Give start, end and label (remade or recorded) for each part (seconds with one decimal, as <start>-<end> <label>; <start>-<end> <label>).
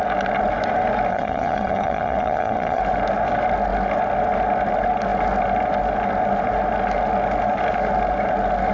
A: 0.0-1.1 recorded; 1.1-2.8 remade; 2.8-8.7 recorded